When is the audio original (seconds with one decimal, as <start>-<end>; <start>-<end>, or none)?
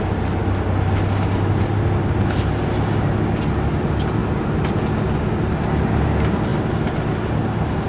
0.0-7.9